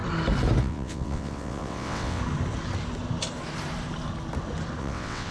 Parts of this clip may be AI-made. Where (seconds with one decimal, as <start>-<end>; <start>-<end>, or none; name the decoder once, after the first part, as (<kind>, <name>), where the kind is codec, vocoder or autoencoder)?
0.6-2.2 (vocoder, WaveNeXt); 4.8-5.3